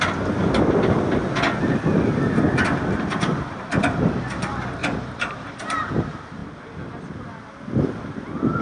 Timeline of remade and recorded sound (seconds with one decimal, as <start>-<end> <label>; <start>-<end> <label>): 0.0-4.8 recorded; 4.8-5.9 remade; 5.9-8.6 recorded